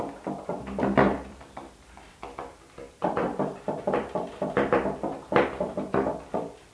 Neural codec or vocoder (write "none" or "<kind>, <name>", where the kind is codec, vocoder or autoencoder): vocoder, BigVGAN v2